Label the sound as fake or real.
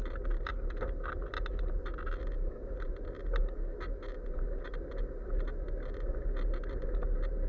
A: real